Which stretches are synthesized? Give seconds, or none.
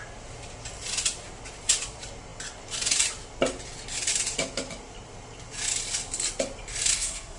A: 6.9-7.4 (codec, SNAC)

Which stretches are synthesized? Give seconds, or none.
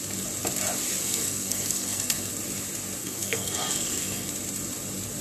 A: 1.0-2.3 (codec, SNAC); 3.0-4.3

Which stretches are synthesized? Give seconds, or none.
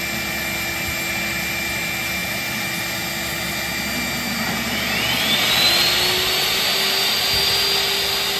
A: none